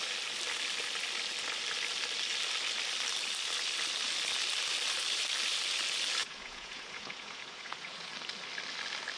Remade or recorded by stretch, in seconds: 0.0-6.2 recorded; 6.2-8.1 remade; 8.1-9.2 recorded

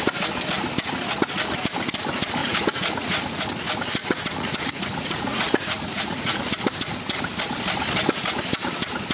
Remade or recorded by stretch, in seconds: 0.0-2.4 recorded; 2.4-3.4 remade; 3.4-4.0 recorded; 4.0-6.4 remade; 6.4-9.1 recorded